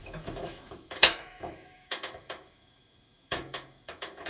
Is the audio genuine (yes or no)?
no